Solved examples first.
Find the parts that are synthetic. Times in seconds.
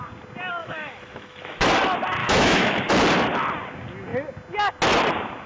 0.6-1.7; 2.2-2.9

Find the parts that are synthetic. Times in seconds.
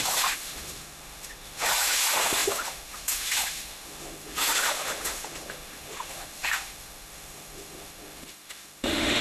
0.0-9.2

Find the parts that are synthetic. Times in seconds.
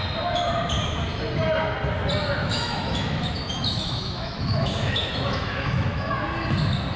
2.4-6.1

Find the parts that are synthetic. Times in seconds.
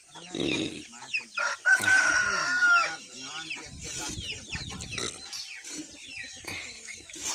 2.4-3.3; 6.2-7.3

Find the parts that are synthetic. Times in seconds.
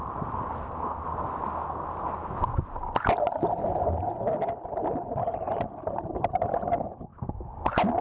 none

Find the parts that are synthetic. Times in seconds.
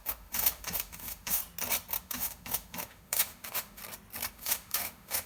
0.0-1.4; 2.0-3.8; 4.3-5.3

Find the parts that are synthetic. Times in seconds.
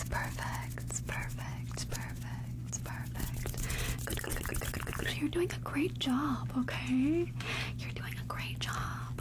none